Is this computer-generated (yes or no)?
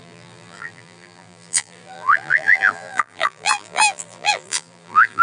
yes